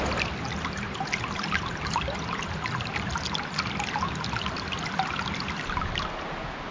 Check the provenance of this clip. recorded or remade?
recorded